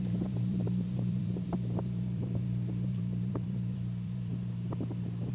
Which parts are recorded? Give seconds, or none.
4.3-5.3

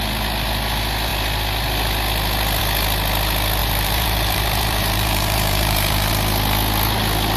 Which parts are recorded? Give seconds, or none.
0.0-3.6; 6.1-7.4